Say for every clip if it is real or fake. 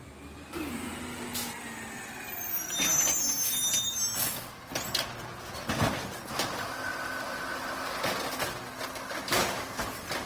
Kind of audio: real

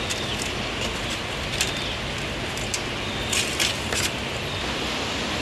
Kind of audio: real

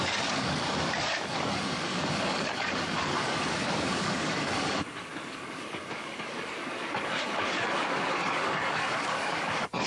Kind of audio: fake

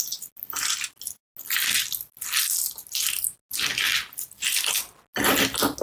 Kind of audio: real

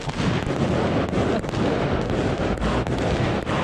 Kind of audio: real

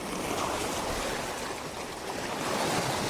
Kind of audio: real